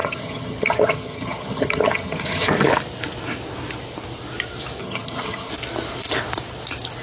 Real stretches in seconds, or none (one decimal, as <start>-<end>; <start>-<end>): 2.5-4.8; 5.5-7.0